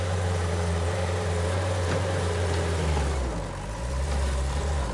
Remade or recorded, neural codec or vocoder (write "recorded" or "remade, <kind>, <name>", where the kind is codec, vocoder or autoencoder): remade, vocoder, BigVGAN v2